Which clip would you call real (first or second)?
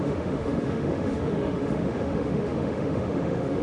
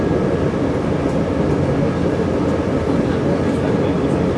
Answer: second